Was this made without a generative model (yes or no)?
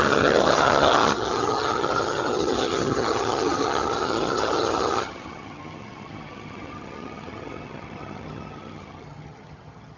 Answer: no